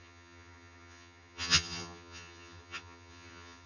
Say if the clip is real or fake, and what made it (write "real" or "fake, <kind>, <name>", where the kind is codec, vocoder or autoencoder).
fake, vocoder, HiFi-GAN